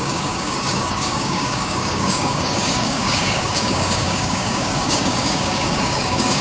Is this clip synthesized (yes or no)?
yes